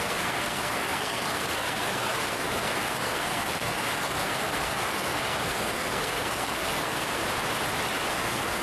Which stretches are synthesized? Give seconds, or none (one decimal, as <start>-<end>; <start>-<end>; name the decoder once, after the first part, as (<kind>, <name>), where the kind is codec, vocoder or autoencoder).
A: 0.0-7.2 (codec, SNAC); 8.1-8.6

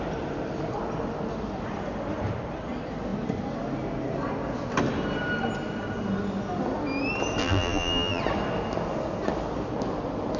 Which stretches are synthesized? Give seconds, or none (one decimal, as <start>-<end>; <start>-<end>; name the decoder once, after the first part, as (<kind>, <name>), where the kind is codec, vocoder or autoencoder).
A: 7.4-8.2 (vocoder, BigVGAN v2)

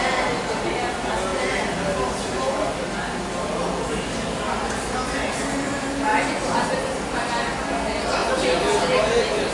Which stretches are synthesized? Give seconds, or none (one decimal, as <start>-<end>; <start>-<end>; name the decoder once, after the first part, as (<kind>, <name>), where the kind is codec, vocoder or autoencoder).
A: none

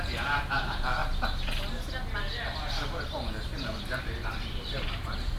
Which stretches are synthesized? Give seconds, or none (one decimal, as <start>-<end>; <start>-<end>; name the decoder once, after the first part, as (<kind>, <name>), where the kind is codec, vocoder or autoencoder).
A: 0.0-1.0 (vocoder, BigVGAN v2); 4.0-5.4

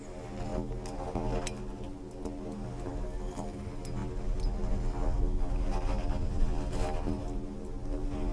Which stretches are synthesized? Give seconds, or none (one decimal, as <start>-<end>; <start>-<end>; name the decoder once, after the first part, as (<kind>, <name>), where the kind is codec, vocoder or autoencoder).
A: none